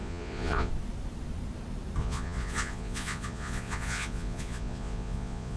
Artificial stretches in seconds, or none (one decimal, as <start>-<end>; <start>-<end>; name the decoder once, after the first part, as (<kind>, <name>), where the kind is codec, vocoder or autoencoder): 0.0-0.7 (vocoder, Vocos); 2.0-5.6